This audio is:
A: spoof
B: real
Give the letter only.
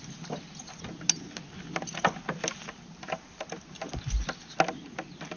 B